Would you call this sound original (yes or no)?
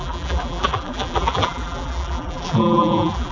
no